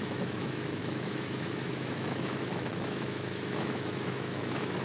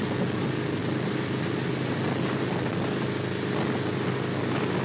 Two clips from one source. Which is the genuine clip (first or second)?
second